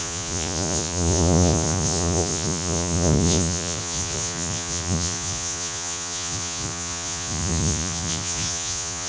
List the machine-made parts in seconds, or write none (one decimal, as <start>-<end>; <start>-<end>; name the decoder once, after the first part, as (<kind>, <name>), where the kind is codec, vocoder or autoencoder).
0.0-9.1 (vocoder, Vocos)